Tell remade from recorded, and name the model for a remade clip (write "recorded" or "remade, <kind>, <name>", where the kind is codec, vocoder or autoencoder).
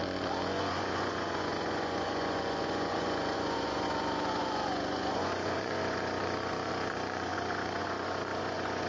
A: remade, vocoder, Vocos